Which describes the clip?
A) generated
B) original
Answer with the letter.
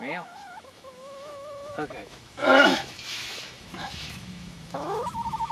A